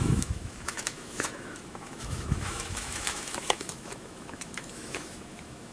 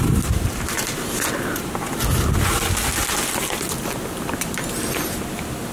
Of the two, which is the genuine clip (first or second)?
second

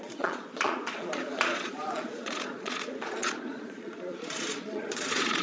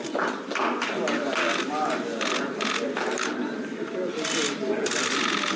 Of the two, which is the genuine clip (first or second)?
second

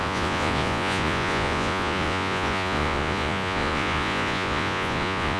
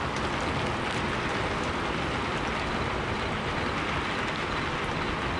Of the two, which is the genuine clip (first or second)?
second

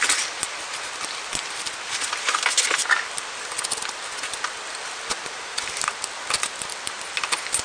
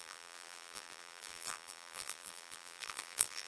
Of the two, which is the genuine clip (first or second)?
first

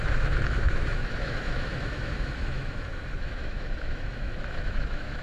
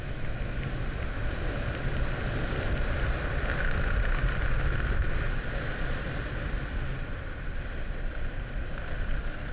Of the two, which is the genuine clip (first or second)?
second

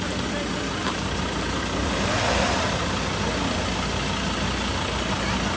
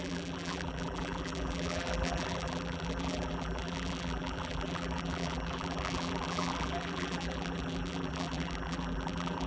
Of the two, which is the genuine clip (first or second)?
first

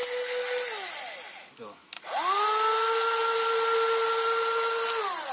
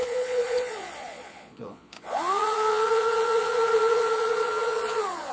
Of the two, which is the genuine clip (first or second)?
first